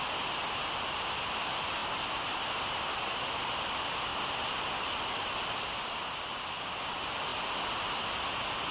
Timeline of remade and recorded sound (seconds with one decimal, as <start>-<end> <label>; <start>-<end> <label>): 0.0-8.7 recorded